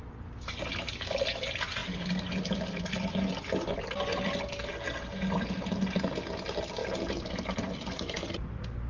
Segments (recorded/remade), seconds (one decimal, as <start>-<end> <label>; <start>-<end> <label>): 0.0-8.9 recorded